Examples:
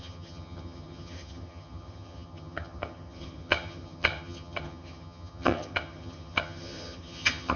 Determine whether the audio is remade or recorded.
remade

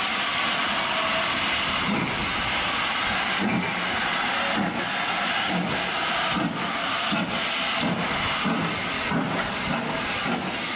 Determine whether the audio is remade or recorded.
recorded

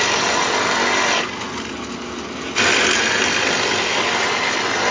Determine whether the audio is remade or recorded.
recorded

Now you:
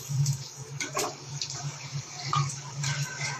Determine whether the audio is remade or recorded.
remade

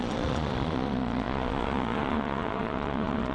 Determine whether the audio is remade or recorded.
remade